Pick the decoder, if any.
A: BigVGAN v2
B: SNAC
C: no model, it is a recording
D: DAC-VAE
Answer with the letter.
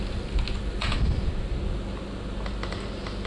C